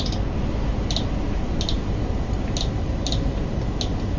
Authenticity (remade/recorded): recorded